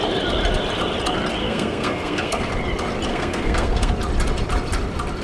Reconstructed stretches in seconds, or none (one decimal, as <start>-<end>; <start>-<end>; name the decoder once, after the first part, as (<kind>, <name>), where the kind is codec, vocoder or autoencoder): 1.4-2.5 (codec, SNAC); 3.1-3.9